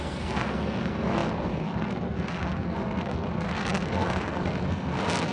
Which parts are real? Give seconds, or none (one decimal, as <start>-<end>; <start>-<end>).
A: none